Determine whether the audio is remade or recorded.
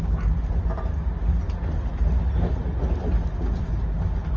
recorded